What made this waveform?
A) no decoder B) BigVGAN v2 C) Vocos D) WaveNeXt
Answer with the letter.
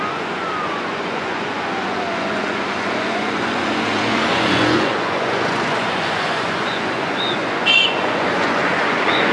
C